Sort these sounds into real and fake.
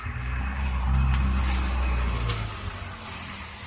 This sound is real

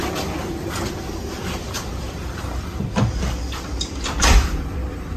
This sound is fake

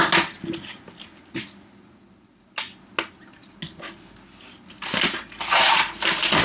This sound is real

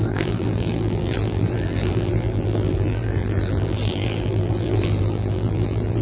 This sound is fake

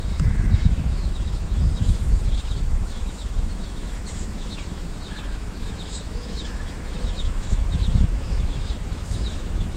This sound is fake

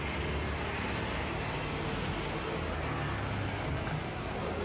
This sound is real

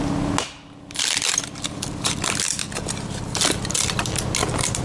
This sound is real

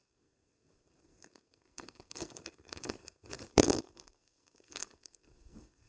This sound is fake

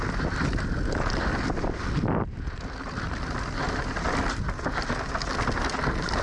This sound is real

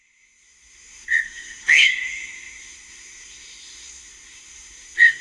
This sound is fake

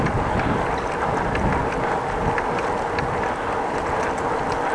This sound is real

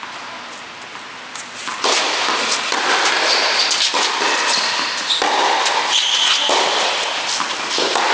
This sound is real